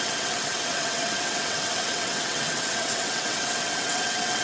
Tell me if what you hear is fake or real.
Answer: fake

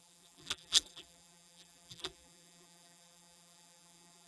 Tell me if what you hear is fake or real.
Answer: fake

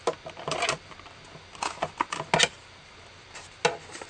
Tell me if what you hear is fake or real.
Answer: real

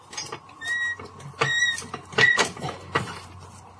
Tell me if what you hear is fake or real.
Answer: real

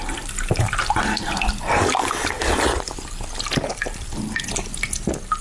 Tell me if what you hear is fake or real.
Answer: real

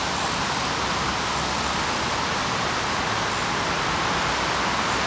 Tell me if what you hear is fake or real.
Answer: real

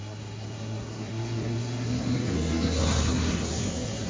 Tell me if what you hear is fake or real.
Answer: fake